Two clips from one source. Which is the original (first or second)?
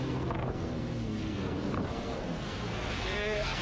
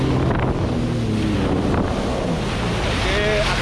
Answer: second